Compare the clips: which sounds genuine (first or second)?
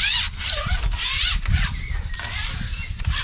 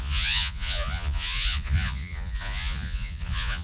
first